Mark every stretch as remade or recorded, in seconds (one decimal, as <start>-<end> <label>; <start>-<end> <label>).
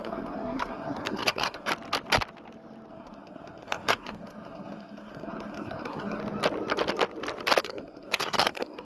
0.0-1.7 remade; 1.7-2.9 recorded; 2.9-6.2 remade; 6.2-7.6 recorded; 7.6-8.8 remade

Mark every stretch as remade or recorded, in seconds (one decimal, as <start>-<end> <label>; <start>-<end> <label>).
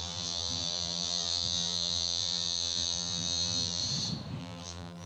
0.0-3.8 remade; 3.8-4.4 recorded; 4.4-5.1 remade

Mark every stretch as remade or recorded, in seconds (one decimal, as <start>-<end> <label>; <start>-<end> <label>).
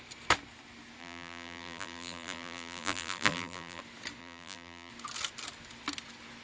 0.0-1.0 recorded; 1.0-3.8 remade; 3.8-4.2 recorded; 4.2-4.9 remade; 4.9-6.4 recorded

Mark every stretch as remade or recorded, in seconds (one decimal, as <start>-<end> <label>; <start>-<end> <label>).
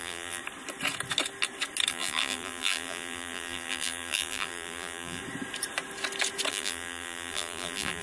0.0-0.4 remade; 0.4-1.9 recorded; 1.9-5.2 remade; 5.2-6.5 recorded; 6.5-8.0 remade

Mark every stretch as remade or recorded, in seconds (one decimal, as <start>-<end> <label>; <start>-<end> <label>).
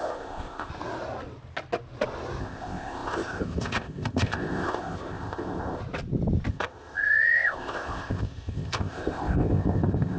0.0-0.7 remade; 0.7-2.4 recorded; 2.4-5.8 remade; 5.8-6.5 recorded; 6.5-10.2 remade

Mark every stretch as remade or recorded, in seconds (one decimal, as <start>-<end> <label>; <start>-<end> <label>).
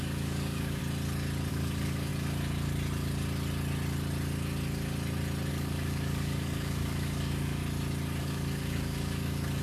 0.0-0.8 remade; 0.8-1.5 recorded; 1.5-2.1 remade; 2.1-5.5 recorded; 5.5-7.6 remade; 7.6-8.2 recorded; 8.2-9.6 remade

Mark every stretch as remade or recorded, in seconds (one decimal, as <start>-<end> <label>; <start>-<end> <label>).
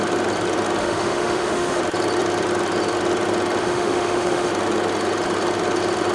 0.0-0.8 recorded; 0.8-1.8 remade; 1.8-3.6 recorded; 3.6-4.5 remade; 4.5-6.1 recorded